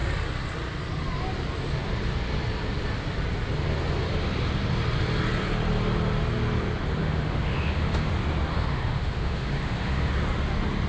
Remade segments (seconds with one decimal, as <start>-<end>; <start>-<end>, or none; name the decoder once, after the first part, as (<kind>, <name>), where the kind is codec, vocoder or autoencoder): 7.0-8.1 (autoencoder, DAC-VAE); 8.5-10.1

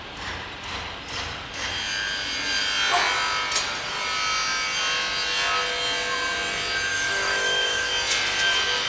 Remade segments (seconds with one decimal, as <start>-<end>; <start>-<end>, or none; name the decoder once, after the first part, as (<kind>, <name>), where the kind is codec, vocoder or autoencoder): 6.9-7.9 (autoencoder, DAC-VAE)

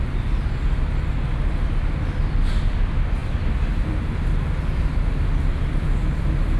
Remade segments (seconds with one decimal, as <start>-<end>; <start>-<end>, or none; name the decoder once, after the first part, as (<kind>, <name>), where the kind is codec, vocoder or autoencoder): none

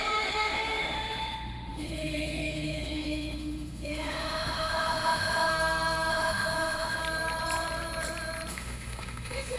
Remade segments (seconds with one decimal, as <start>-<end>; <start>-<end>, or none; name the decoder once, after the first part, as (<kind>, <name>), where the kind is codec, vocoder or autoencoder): 0.0-5.5 (autoencoder, DAC-VAE); 6.1-7.0; 8.5-9.6

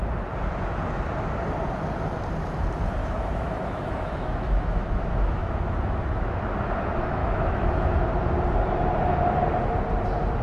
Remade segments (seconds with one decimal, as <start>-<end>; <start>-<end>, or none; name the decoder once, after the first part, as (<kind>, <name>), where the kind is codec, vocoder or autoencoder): 3.0-6.4 (autoencoder, DAC-VAE); 7.2-7.7

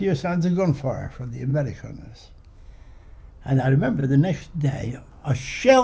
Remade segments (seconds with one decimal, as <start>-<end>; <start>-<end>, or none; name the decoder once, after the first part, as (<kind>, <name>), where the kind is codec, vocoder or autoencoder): 0.0-1.5 (autoencoder, DAC-VAE); 2.5-2.9; 3.6-4.0; 5.1-5.8

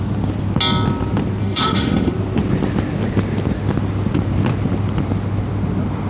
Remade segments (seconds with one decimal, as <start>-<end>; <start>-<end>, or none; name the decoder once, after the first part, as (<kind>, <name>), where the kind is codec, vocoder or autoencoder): 1.4-2.1 (autoencoder, DAC-VAE)

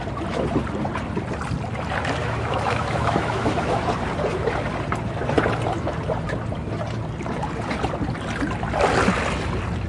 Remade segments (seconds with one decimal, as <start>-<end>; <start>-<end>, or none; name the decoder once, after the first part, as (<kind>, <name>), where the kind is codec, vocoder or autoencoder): 2.2-3.8 (autoencoder, DAC-VAE)